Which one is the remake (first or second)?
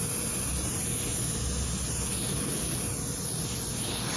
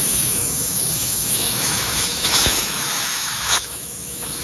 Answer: second